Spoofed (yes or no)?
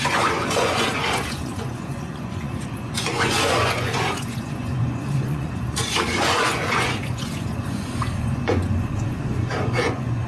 yes